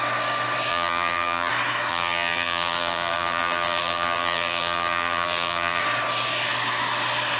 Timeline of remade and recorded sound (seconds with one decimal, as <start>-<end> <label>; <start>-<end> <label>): 0.0-0.7 recorded; 0.7-1.5 remade; 1.5-1.9 recorded; 1.9-5.8 remade; 5.8-7.4 recorded